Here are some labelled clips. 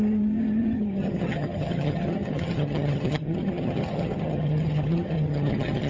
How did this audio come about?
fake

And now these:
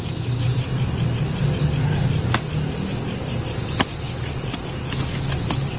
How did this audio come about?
real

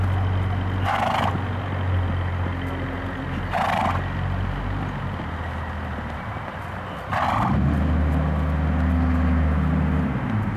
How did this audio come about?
real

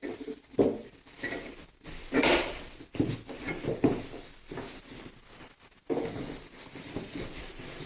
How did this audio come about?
real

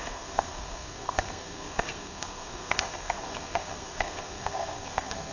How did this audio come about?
fake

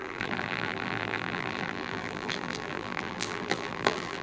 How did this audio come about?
fake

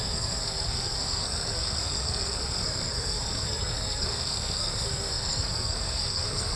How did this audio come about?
fake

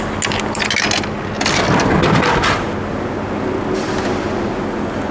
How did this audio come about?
real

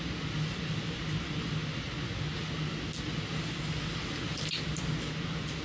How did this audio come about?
real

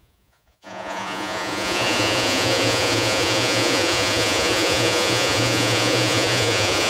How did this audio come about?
fake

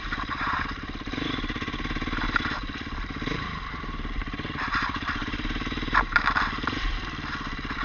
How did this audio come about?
fake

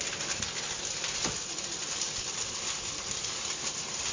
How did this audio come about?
real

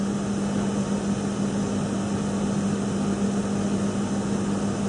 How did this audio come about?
real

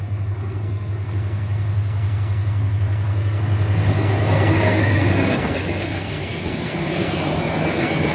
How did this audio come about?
fake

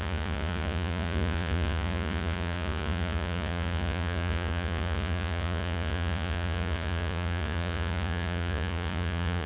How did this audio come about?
fake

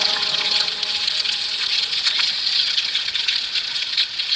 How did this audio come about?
fake